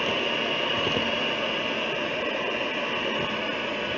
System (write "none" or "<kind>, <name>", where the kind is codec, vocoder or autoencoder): none